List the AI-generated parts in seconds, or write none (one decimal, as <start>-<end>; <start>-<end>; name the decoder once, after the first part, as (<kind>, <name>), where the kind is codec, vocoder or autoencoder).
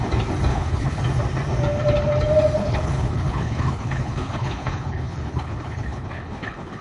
0.5-1.0 (codec, HILCodec); 2.6-6.8